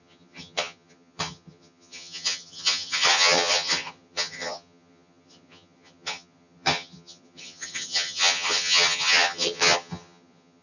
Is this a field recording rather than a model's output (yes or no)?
no